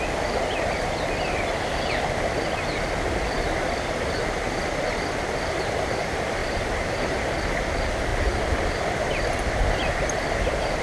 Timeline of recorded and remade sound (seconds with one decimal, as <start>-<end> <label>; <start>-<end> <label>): 0.0-6.4 recorded; 6.4-7.2 remade; 7.2-10.8 recorded